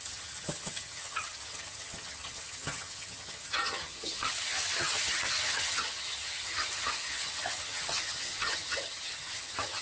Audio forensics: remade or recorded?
remade